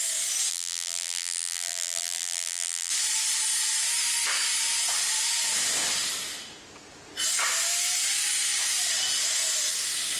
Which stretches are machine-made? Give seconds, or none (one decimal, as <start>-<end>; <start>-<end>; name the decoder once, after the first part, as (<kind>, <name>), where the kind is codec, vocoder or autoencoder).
0.5-2.9 (vocoder, BigVGAN v2)